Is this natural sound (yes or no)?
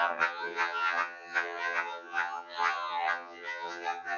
no